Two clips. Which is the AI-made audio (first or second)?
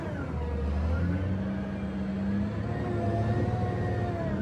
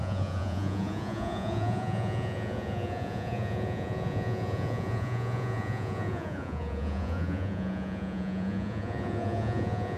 second